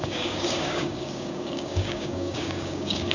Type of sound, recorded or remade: remade